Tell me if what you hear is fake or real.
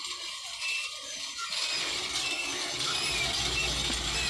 real